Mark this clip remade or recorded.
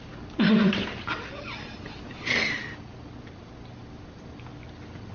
recorded